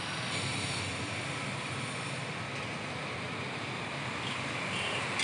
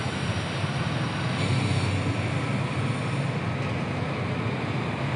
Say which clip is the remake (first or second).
first